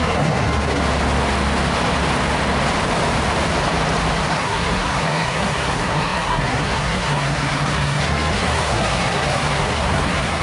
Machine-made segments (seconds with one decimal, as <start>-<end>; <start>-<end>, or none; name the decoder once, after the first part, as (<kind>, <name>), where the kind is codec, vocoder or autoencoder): 0.0-0.9 (codec, SNAC); 4.3-10.4